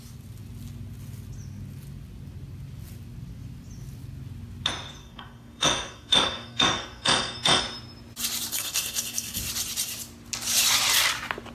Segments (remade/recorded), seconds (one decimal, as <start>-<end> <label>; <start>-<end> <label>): 0.0-5.0 recorded; 5.0-7.6 remade; 7.6-8.5 recorded; 8.5-9.4 remade; 9.4-11.5 recorded